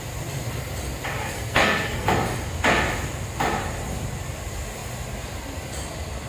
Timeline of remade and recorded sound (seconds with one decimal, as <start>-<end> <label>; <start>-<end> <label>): 0.0-1.2 recorded; 1.2-2.1 remade; 2.1-6.3 recorded